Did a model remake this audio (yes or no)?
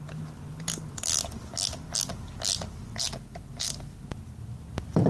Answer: no